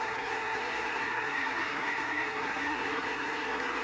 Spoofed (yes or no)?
yes